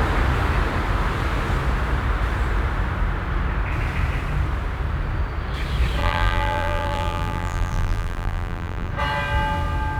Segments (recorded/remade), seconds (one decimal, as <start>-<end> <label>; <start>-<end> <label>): 0.0-6.0 recorded; 6.0-8.9 remade; 8.9-10.0 recorded